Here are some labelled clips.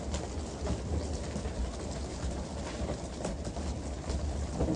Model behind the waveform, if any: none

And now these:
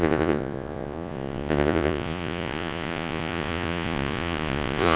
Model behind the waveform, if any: vocoder, Vocos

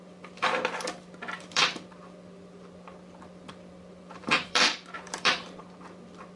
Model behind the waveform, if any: vocoder, BigVGAN v2